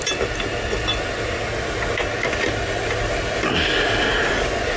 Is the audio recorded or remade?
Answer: recorded